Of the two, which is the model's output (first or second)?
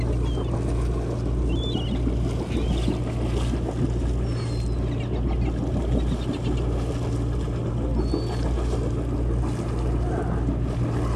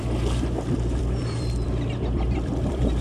second